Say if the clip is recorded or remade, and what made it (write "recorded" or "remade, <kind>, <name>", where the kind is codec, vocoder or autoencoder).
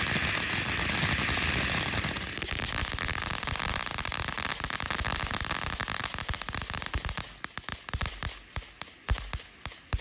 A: recorded